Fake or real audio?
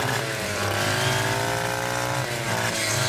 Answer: real